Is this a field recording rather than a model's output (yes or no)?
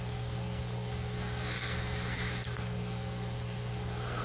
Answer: no